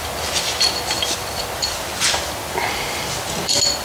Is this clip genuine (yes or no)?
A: yes